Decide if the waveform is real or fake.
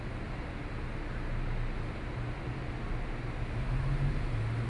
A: real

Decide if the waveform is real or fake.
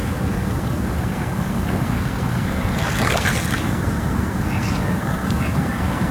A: fake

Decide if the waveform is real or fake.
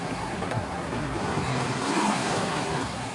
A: fake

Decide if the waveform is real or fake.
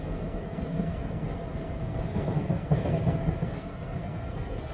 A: fake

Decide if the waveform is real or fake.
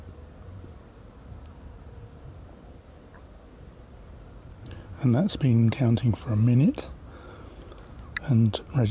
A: real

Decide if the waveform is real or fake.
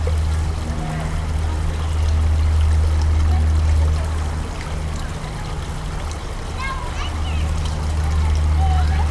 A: real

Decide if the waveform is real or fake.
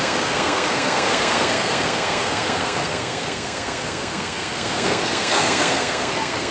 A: fake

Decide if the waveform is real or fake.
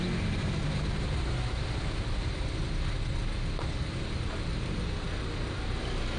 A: real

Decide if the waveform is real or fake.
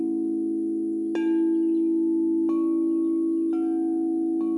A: real